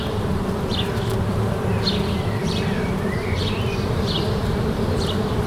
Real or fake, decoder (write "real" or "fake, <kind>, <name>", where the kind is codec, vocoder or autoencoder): fake, vocoder, BigVGAN v2